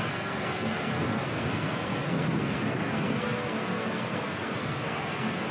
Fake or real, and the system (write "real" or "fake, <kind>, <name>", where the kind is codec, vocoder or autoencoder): fake, codec, SNAC